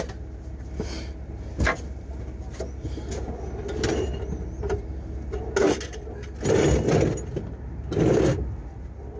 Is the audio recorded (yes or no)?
yes